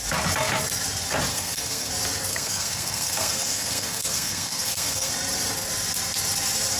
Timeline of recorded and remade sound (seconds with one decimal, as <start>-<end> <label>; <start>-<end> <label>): 0.0-1.3 recorded; 1.3-1.9 remade; 1.9-2.3 recorded; 2.3-5.1 remade; 5.1-6.8 recorded